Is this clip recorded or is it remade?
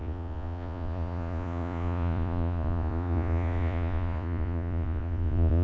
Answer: remade